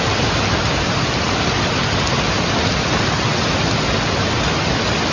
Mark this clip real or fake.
real